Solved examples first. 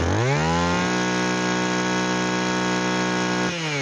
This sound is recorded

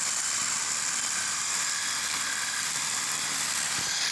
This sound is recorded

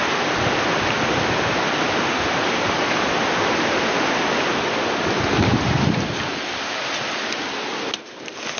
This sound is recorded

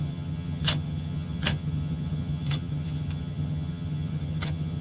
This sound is remade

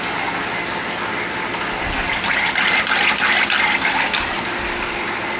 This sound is recorded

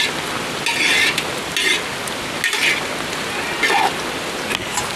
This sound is recorded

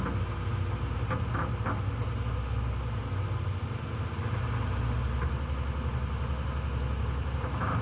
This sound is recorded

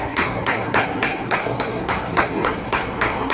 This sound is remade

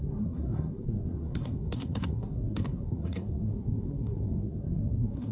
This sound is remade